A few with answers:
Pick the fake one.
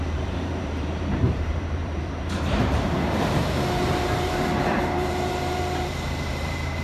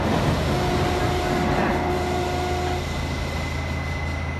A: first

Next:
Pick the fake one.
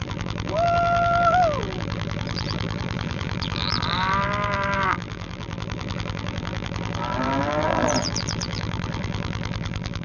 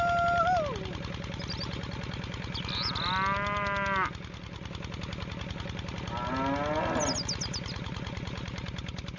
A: first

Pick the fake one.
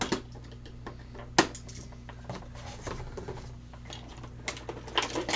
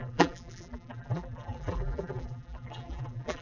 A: second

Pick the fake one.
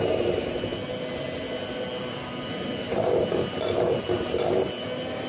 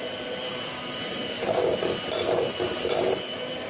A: second